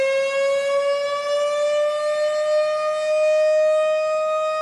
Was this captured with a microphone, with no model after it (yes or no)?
yes